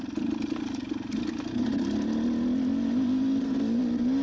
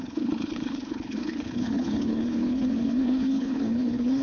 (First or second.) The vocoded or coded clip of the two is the second